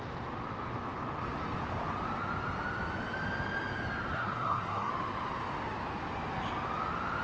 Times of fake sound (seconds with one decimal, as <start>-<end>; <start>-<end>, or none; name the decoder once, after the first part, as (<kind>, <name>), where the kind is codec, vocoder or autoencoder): 4.1-4.9 (codec, SNAC)